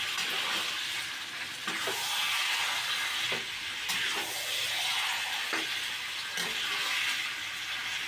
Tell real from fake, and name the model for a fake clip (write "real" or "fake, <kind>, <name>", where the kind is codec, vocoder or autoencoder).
real